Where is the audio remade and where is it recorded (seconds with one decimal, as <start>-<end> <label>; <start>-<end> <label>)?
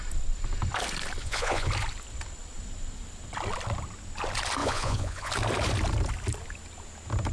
0.0-1.2 recorded; 1.2-1.7 remade; 1.7-4.6 recorded; 4.6-5.3 remade; 5.3-7.3 recorded